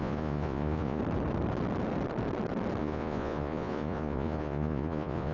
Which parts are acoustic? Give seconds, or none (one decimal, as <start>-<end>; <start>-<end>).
1.0-2.8